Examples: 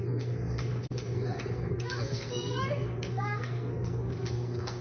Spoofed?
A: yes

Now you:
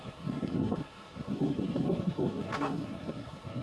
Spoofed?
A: yes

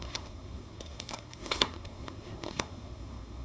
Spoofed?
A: yes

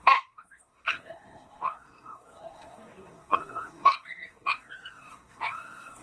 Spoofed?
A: yes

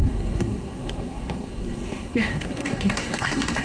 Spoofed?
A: yes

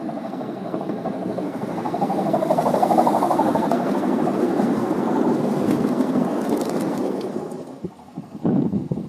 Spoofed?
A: yes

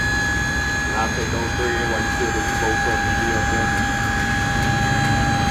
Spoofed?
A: no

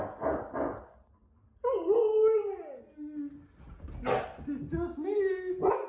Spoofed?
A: no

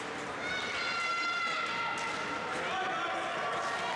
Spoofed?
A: no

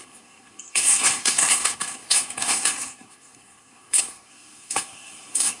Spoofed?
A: yes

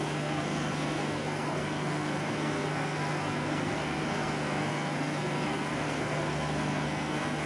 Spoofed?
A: yes